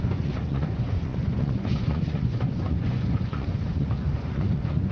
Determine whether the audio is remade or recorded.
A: remade